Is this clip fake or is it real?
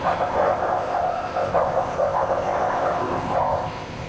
fake